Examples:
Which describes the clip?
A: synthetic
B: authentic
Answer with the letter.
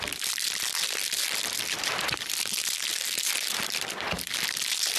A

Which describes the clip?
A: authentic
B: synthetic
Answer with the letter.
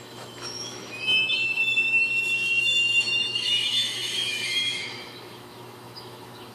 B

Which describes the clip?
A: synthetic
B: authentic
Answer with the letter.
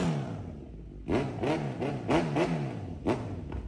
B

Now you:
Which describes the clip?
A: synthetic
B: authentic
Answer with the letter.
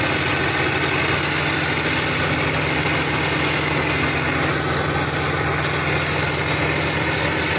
B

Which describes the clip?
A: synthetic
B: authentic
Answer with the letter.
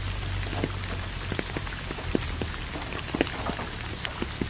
B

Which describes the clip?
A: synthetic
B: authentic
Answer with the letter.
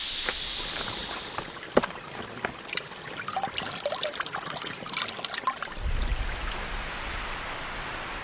B